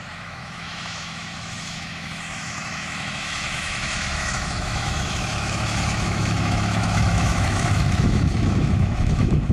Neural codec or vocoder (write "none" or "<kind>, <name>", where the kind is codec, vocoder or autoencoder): autoencoder, DAC-VAE